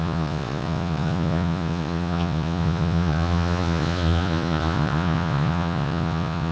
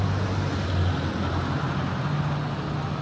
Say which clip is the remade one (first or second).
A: first